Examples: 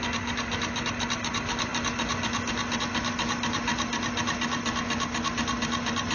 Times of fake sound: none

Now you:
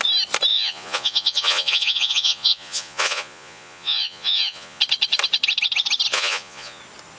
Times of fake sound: 0.5-4.8 (vocoder, Vocos); 6.1-6.8

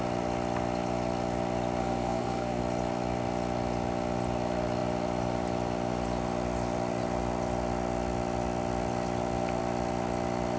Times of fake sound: 1.8-2.6 (codec, SNAC)

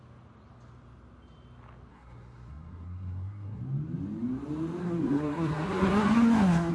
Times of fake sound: 1.9-3.6 (codec, SNAC); 4.8-6.7

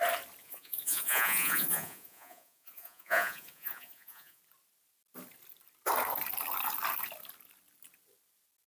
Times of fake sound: 0.4-4.4 (vocoder, Vocos)

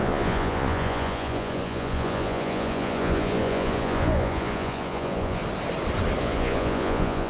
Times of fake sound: 0.0-5.4 (vocoder, Vocos); 6.2-7.3

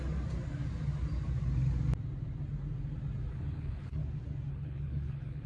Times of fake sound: 3.3-4.0 (codec, HILCodec); 4.5-5.5